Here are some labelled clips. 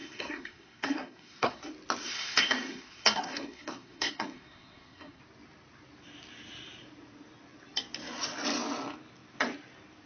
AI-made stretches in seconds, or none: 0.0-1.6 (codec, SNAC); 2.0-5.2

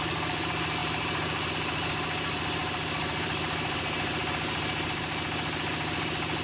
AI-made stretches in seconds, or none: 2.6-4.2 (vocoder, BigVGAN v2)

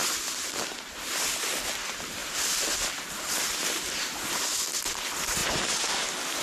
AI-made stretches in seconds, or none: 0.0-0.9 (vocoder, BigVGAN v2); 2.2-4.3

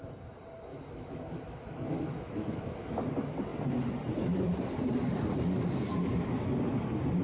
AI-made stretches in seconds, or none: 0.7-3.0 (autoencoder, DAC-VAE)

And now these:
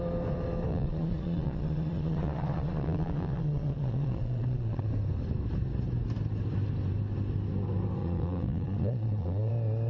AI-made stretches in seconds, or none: 0.7-4.9 (vocoder, Vocos); 8.0-9.5

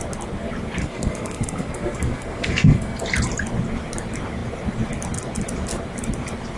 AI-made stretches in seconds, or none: 0.8-3.0 (codec, SNAC)